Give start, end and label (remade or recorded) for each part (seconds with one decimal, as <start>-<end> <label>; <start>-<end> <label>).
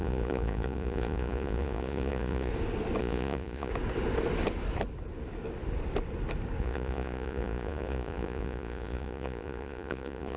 0.0-2.5 remade; 2.5-3.0 recorded; 3.0-3.7 remade; 3.7-6.6 recorded; 6.6-10.4 remade